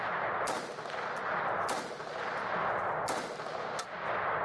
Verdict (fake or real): real